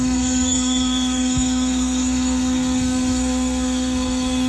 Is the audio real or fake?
fake